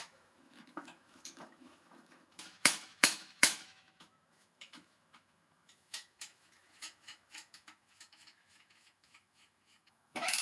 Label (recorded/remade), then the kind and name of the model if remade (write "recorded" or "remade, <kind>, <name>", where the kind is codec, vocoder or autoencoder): remade, autoencoder, DAC-VAE